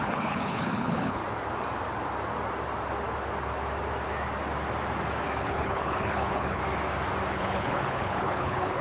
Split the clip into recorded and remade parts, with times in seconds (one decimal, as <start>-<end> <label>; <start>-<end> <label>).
0.0-1.2 remade; 1.2-5.4 recorded; 5.4-6.6 remade; 6.6-7.3 recorded; 7.3-8.8 remade

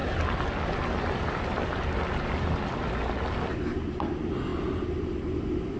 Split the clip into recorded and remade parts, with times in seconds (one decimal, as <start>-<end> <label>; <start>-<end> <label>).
0.0-5.8 recorded